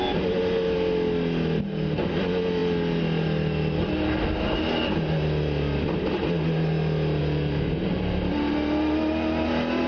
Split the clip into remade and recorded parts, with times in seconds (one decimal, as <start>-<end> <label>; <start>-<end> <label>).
0.0-9.9 recorded